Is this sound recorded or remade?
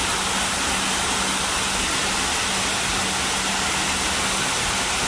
recorded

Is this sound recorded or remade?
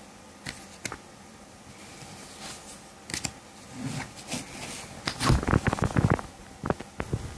recorded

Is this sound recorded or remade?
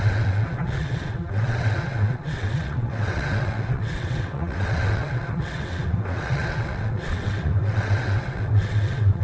remade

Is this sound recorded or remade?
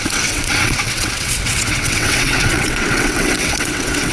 remade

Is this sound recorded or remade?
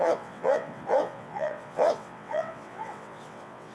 remade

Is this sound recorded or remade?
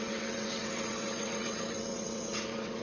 remade